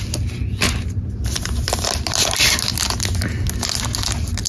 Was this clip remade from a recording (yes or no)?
no